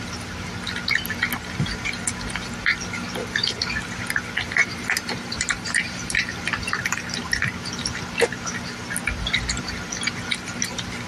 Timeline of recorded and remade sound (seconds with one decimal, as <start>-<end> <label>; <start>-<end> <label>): 0.0-4.6 recorded; 4.6-7.4 remade; 7.4-11.1 recorded